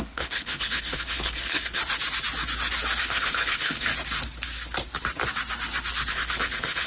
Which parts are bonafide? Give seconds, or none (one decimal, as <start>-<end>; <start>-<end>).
1.8-3.0; 3.9-6.1